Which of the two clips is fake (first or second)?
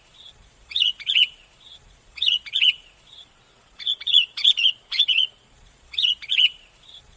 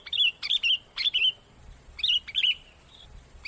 first